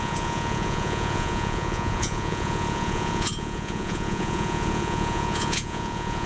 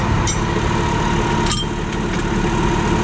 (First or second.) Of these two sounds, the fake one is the first